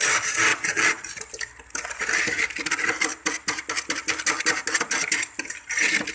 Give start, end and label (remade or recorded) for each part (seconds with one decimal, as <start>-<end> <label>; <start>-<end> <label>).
0.0-0.5 recorded; 0.5-1.1 remade; 1.1-6.1 recorded